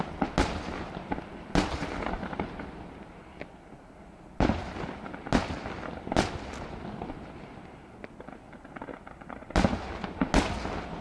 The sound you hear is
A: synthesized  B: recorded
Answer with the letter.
B